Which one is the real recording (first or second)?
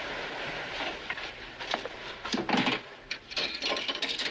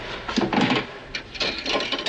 first